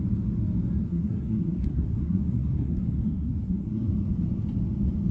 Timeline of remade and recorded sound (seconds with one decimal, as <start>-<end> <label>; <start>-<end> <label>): 0.0-0.8 recorded; 0.8-3.9 remade; 3.9-5.1 recorded